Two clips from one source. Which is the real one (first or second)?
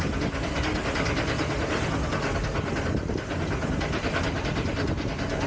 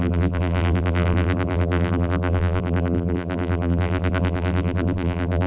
first